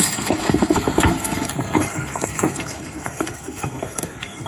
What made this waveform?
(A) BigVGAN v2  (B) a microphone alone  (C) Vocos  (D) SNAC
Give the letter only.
D